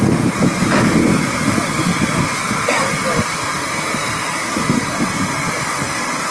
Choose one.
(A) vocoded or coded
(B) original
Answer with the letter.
B